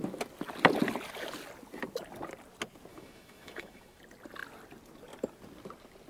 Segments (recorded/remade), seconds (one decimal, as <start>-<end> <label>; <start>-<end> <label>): 0.0-2.9 recorded; 2.9-4.0 remade; 4.0-6.1 recorded